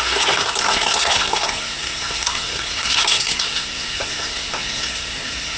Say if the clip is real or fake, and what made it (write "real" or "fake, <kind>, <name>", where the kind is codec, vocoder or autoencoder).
fake, codec, SNAC